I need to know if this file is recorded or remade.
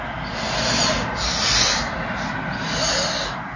recorded